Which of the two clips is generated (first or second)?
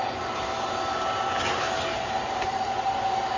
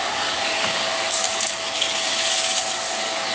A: second